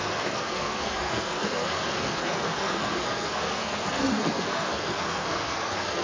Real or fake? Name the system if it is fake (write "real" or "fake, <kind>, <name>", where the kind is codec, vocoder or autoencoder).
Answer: fake, codec, SNAC